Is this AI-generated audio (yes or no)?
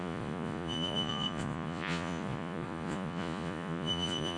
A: yes